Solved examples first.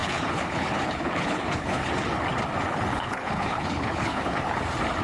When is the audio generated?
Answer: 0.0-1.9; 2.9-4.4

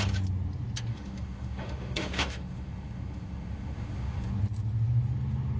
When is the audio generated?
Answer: 0.9-4.3